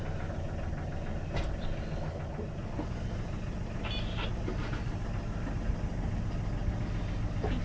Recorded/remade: recorded